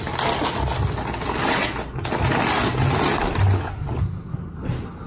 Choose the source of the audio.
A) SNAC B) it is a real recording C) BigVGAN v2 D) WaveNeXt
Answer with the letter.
B